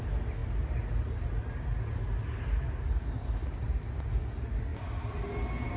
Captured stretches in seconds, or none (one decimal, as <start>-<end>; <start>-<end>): 0.0-5.8